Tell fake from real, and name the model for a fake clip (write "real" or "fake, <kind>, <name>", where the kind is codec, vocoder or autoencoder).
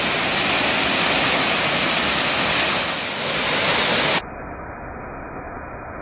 real